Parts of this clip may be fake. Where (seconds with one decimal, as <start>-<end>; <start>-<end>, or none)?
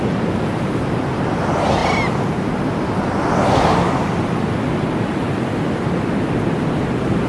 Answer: none